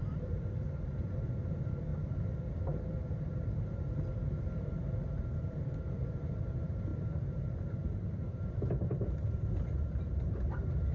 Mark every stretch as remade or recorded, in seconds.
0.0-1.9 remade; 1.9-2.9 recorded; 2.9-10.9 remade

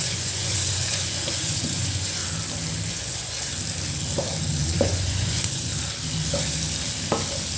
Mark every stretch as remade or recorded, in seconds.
0.0-2.2 remade; 2.2-2.9 recorded; 2.9-3.5 remade; 3.5-4.6 recorded; 4.6-5.7 remade; 5.7-7.6 recorded

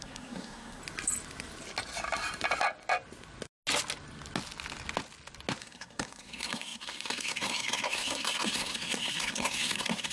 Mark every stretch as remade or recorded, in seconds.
0.0-0.8 remade; 0.8-5.6 recorded; 5.6-10.1 remade

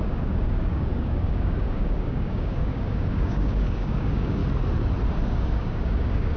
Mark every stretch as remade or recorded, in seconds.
0.0-4.4 remade; 4.4-5.1 recorded; 5.1-6.4 remade